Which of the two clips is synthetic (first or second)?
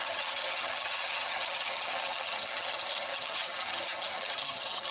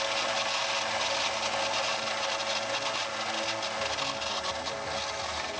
first